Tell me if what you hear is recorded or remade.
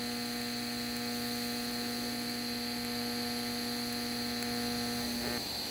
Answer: recorded